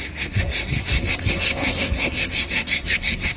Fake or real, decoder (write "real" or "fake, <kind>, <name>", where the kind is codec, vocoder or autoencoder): fake, codec, SNAC